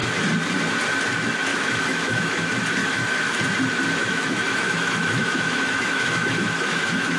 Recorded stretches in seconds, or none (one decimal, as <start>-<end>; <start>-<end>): 0.0-1.5; 2.4-2.8; 3.4-4.0